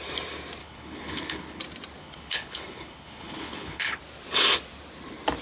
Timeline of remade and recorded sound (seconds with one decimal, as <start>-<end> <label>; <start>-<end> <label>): 0.0-0.6 recorded; 0.6-1.6 remade; 1.6-2.0 recorded; 2.0-4.0 remade; 4.0-5.4 recorded